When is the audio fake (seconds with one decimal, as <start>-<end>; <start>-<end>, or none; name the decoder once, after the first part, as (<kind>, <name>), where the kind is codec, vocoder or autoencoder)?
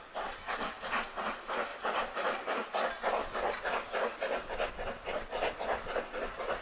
1.7-2.7 (vocoder, BigVGAN v2)